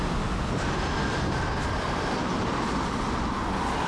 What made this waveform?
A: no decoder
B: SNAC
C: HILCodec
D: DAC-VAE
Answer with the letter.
A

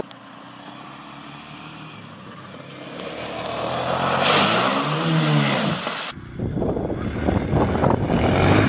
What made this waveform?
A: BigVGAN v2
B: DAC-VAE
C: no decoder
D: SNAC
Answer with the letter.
C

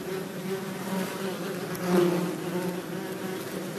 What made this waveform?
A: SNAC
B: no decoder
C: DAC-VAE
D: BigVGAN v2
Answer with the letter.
B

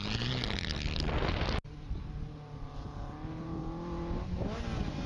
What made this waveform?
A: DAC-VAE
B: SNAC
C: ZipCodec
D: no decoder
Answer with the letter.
D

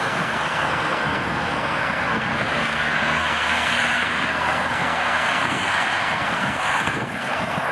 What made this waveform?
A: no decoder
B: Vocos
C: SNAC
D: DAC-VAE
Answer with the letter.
C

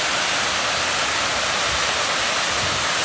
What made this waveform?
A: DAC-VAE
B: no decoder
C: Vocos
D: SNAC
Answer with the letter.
B